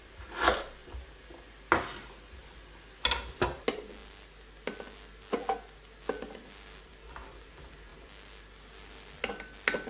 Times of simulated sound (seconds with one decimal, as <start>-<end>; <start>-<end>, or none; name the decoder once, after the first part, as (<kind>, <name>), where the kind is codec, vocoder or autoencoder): none